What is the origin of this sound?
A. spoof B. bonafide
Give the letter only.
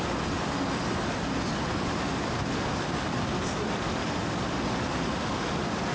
B